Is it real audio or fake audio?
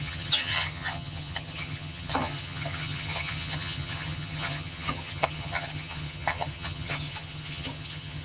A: fake